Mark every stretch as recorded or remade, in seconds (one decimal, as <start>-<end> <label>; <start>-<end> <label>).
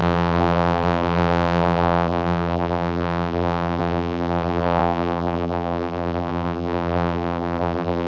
0.0-8.1 remade